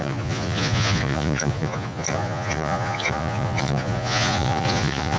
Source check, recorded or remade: remade